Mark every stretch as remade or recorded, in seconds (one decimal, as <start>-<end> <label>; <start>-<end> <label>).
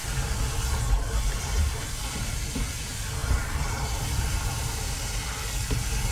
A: 0.0-3.2 recorded; 3.2-3.9 remade; 3.9-4.3 recorded; 4.3-5.3 remade; 5.3-6.1 recorded